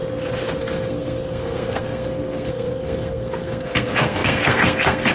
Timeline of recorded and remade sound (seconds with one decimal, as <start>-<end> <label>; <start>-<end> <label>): 0.0-0.6 recorded; 0.6-5.1 remade